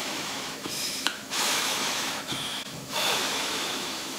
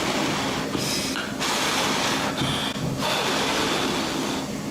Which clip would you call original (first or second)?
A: second